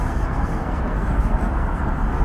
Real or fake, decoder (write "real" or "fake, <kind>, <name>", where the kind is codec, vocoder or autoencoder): fake, codec, SNAC